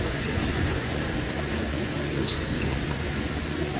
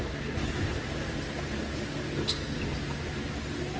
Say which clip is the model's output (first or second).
first